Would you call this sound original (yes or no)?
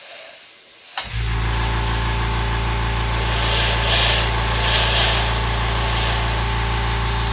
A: yes